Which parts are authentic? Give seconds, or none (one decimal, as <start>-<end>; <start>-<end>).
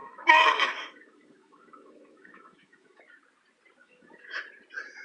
3.0-3.8; 4.4-5.0